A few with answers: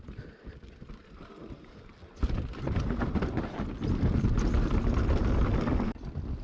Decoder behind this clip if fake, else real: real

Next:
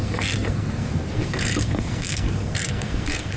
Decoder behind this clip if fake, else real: fake, codec, SNAC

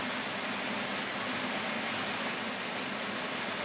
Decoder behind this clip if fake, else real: real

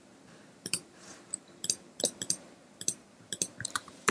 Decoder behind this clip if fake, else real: fake, vocoder, BigVGAN v2